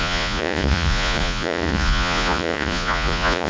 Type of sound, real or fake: fake